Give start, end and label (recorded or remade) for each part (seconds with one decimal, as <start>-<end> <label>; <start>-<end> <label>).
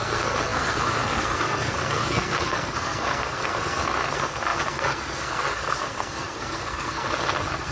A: 0.0-7.7 remade